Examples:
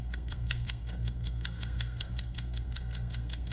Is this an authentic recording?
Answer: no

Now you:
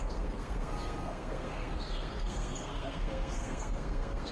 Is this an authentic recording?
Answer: no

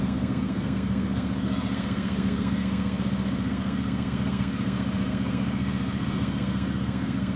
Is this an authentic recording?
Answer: no